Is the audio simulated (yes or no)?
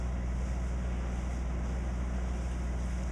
no